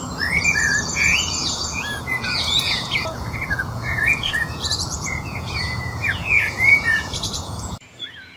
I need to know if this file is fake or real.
fake